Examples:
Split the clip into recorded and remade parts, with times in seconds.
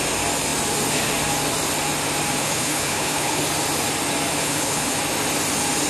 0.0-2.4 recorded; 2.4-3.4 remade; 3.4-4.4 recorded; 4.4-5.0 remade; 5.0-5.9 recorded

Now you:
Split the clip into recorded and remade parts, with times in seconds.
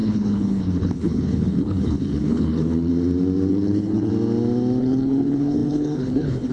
0.0-2.9 remade; 2.9-3.5 recorded; 3.5-4.1 remade; 4.1-4.8 recorded; 4.8-6.5 remade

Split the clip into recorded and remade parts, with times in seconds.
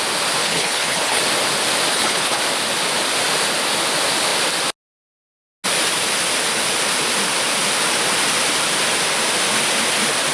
0.0-0.4 recorded; 0.4-1.2 remade; 1.2-1.9 recorded; 1.9-2.4 remade; 2.4-10.3 recorded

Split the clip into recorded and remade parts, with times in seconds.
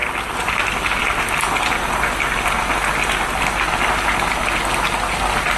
0.0-5.6 recorded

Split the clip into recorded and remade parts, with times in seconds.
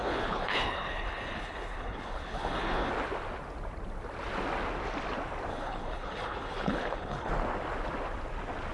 0.0-2.9 remade; 2.9-5.5 recorded; 5.5-7.3 remade; 7.3-8.7 recorded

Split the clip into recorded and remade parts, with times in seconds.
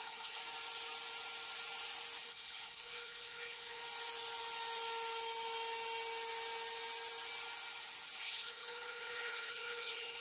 0.0-0.4 remade; 0.4-2.2 recorded; 2.2-3.8 remade; 3.8-8.2 recorded; 8.2-10.2 remade